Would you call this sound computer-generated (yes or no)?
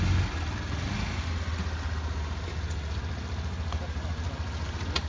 no